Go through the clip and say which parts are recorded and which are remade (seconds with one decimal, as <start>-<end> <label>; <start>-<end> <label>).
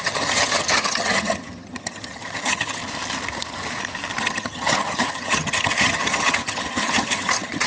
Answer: 0.0-2.8 remade; 2.8-4.2 recorded; 4.2-7.7 remade